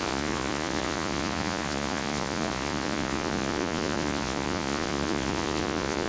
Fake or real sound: fake